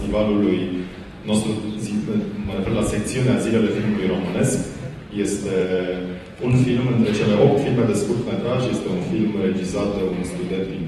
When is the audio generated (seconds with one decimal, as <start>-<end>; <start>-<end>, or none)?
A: 5.6-6.2